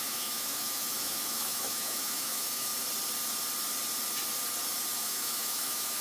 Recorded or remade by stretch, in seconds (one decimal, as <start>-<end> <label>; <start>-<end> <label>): 0.0-2.7 remade; 2.7-5.0 recorded; 5.0-6.0 remade